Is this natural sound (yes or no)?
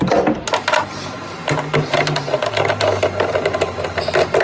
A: yes